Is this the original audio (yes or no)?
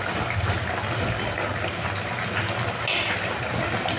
yes